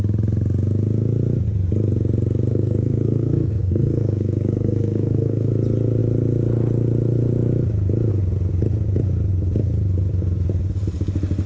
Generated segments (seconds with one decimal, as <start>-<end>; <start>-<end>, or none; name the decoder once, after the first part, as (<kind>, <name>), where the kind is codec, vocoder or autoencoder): 2.5-5.5 (codec, SNAC)